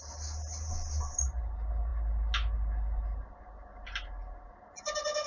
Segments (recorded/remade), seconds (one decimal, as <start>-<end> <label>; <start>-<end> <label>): 0.0-5.3 recorded